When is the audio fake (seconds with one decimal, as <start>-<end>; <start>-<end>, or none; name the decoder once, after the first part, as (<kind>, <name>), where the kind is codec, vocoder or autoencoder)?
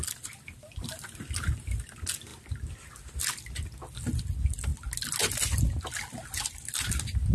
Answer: none